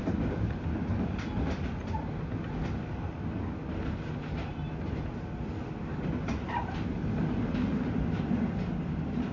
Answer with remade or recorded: recorded